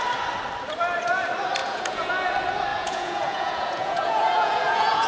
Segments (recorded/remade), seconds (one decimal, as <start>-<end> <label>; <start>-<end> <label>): 0.0-1.6 recorded; 1.6-2.1 remade; 2.1-2.7 recorded; 2.7-5.1 remade